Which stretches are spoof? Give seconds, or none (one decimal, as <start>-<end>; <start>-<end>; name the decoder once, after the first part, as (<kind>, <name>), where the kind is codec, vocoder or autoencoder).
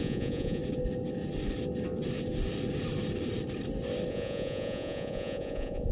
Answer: 0.0-0.6 (vocoder, Vocos); 4.1-5.9